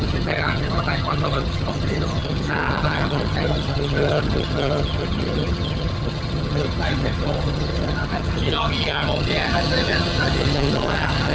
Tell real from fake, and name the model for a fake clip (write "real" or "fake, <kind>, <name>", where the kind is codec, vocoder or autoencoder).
fake, vocoder, HiFi-GAN